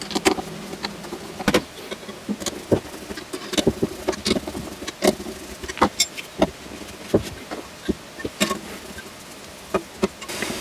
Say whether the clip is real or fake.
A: real